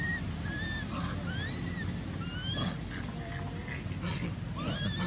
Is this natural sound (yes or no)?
yes